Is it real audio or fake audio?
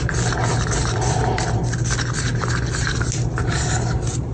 real